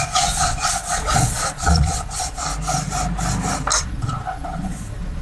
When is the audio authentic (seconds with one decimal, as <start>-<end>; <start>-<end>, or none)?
2.5-3.8